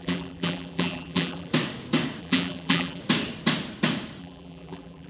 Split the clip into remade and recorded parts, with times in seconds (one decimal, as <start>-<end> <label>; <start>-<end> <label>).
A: 0.0-1.5 remade; 1.5-2.2 recorded; 2.2-3.0 remade; 3.0-4.2 recorded; 4.2-5.1 remade

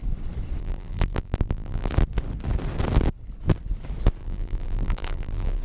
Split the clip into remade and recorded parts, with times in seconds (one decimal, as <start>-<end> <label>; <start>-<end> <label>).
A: 0.0-0.6 recorded; 0.6-1.9 remade; 1.9-4.2 recorded; 4.2-5.6 remade

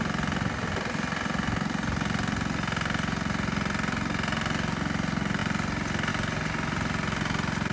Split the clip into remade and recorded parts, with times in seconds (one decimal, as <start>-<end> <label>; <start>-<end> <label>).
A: 0.0-7.7 recorded

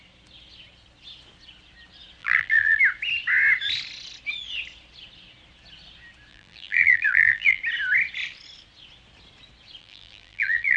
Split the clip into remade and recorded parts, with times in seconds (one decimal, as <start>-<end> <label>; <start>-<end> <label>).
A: 0.0-2.2 recorded; 2.2-2.8 remade; 2.8-6.3 recorded; 6.3-7.6 remade; 7.6-9.8 recorded; 9.8-10.8 remade

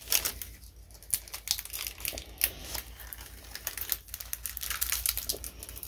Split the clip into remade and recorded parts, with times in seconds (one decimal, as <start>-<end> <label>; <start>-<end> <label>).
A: 0.0-5.9 recorded